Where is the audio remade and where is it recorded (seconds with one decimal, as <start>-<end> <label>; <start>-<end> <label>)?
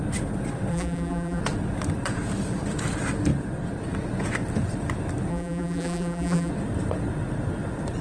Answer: 0.0-0.7 recorded; 0.7-1.4 remade; 1.4-5.3 recorded; 5.3-6.5 remade; 6.5-8.0 recorded